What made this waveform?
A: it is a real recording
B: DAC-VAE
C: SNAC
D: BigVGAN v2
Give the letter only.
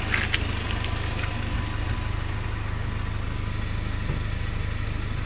A